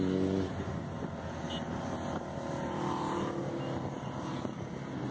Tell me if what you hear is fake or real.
real